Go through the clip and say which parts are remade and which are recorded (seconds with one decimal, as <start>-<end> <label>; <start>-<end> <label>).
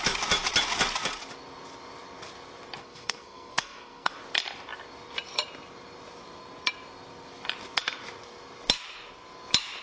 0.0-2.8 recorded; 2.8-4.1 remade; 4.1-9.8 recorded